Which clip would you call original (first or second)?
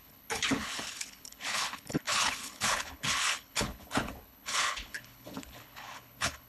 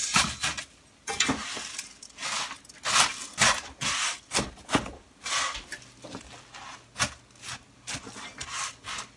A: second